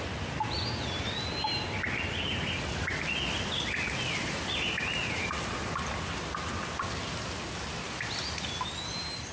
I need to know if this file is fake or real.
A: real